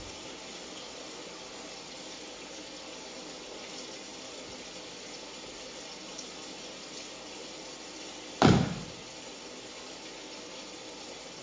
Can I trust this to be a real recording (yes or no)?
yes